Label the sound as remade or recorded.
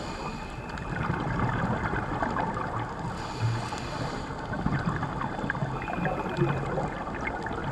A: recorded